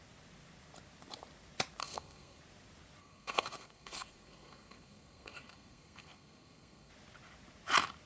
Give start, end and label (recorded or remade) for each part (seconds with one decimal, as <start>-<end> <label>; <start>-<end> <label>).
0.0-1.8 recorded; 1.8-2.4 remade; 2.4-3.0 recorded; 3.0-6.9 remade; 6.9-8.1 recorded